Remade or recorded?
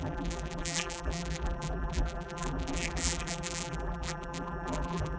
remade